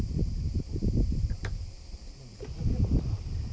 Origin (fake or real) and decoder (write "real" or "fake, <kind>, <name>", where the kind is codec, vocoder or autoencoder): real